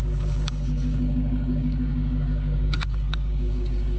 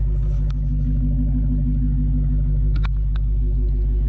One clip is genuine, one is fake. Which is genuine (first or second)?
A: second